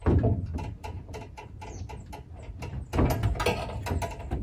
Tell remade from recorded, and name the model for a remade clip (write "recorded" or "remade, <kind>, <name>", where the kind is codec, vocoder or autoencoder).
recorded